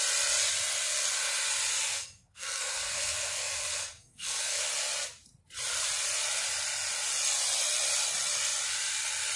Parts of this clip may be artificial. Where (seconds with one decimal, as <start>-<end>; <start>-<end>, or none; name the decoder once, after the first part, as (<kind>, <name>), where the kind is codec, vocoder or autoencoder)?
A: 1.9-4.6 (codec, SNAC)